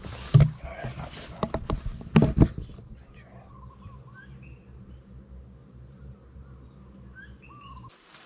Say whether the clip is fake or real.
real